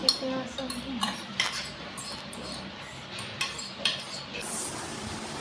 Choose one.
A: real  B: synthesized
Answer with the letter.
A